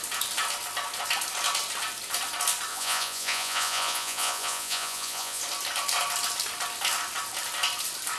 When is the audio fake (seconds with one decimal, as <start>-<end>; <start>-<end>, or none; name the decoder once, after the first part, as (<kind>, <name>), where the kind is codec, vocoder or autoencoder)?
2.7-5.4 (vocoder, Vocos)